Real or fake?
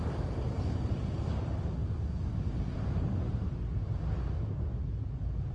real